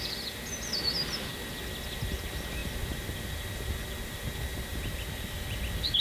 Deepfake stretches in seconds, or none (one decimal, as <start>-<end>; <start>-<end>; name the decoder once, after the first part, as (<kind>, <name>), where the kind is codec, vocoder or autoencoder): 2.6-4.3 (vocoder, BigVGAN v2); 4.7-5.6